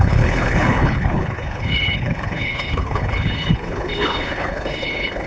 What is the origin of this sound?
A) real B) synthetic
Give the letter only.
B